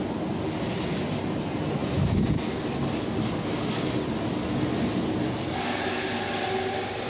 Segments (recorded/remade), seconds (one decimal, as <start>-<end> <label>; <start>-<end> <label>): 0.0-7.1 recorded